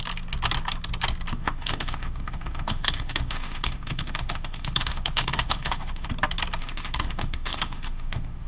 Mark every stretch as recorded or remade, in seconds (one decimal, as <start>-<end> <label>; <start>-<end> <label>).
0.0-1.3 recorded; 1.3-6.1 remade; 6.1-6.6 recorded; 6.6-8.5 remade